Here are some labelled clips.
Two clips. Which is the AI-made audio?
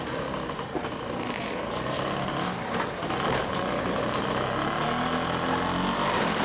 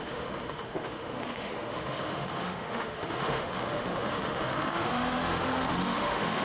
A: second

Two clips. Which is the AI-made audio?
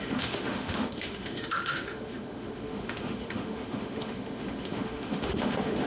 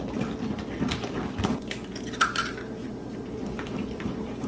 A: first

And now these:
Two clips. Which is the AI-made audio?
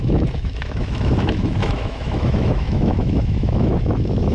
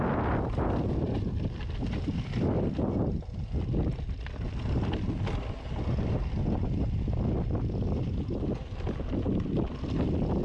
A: first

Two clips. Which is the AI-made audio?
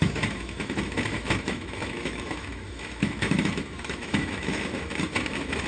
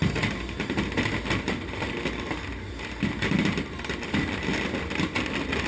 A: first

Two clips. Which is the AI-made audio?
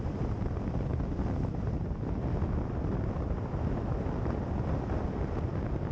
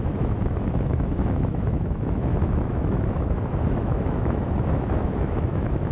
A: second